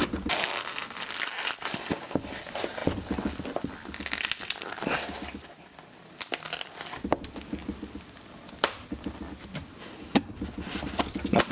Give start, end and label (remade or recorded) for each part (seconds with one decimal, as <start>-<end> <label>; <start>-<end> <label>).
0.0-11.5 recorded